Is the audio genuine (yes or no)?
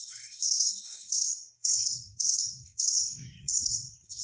no